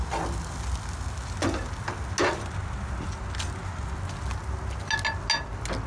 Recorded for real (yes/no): yes